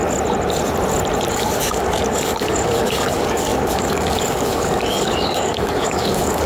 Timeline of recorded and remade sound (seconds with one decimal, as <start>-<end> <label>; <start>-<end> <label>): 0.0-1.3 recorded; 1.3-6.5 remade